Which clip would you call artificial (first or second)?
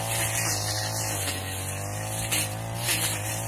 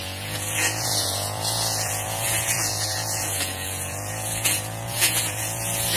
second